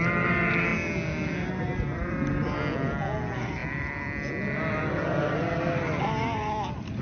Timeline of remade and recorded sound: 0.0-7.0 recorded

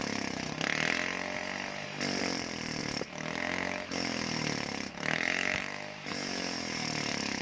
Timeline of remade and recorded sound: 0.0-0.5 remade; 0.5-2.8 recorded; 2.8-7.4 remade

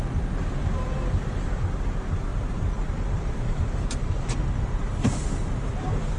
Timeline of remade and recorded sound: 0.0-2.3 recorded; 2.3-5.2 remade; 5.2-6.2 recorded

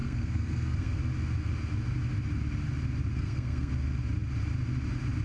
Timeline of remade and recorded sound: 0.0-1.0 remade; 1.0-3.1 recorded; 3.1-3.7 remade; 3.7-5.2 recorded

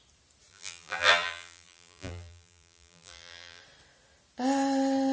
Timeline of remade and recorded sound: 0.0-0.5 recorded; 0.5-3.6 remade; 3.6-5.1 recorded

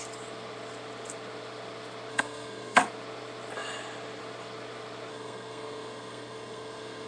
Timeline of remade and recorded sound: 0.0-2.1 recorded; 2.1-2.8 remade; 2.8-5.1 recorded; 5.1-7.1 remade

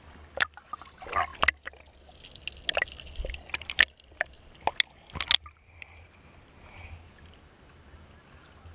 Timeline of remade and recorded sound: 0.0-8.7 recorded